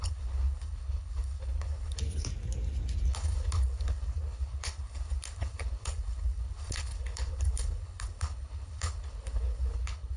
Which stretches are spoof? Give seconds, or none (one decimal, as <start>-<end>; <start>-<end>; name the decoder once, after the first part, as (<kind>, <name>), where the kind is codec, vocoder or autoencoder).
0.0-2.0 (codec, HILCodec); 3.1-10.2